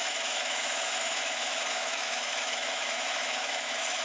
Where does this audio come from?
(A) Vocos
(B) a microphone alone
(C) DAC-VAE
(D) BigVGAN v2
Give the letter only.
C